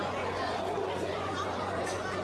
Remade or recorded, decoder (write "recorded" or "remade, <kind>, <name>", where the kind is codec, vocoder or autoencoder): remade, vocoder, Vocos